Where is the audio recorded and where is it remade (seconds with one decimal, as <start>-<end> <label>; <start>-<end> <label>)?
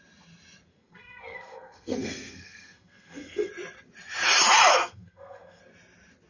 0.0-0.7 recorded; 0.7-3.5 remade; 3.5-4.7 recorded; 4.7-5.6 remade; 5.6-6.3 recorded